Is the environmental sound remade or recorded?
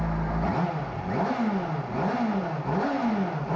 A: recorded